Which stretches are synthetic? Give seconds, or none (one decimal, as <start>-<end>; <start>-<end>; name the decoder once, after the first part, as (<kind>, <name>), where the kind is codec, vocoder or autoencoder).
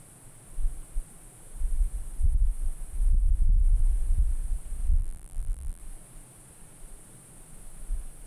4.9-5.8 (vocoder, BigVGAN v2)